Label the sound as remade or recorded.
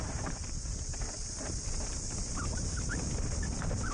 remade